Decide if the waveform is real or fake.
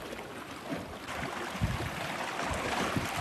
real